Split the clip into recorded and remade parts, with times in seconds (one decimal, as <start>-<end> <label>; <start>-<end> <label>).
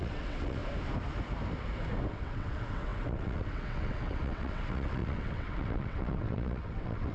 0.0-0.6 remade; 0.6-2.1 recorded; 2.1-7.1 remade